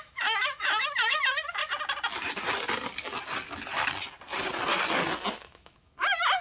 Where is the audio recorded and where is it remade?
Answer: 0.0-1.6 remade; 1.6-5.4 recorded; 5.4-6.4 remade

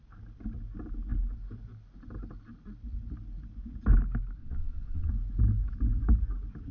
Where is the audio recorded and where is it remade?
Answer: 0.0-4.4 recorded; 4.4-5.1 remade; 5.1-6.7 recorded

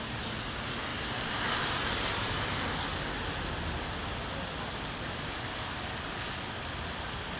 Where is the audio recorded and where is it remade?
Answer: 0.0-0.9 recorded; 0.9-2.5 remade; 2.5-7.4 recorded

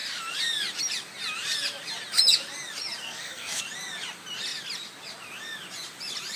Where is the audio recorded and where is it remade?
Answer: 0.0-3.0 recorded; 3.0-3.6 remade; 3.6-6.4 recorded

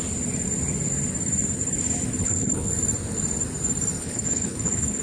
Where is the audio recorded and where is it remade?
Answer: 0.0-2.2 recorded; 2.2-2.7 remade; 2.7-4.0 recorded; 4.0-5.0 remade

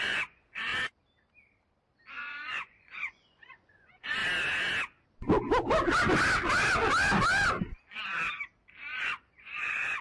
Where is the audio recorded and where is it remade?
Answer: 0.0-0.7 remade; 0.7-2.1 recorded; 2.1-4.2 remade; 4.2-9.0 recorded; 9.0-10.0 remade

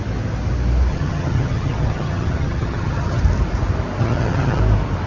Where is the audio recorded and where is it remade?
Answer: 0.0-0.9 recorded; 0.9-3.2 remade; 3.2-4.0 recorded; 4.0-4.6 remade; 4.6-5.1 recorded

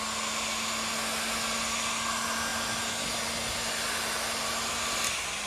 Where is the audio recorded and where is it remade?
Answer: 0.0-5.5 recorded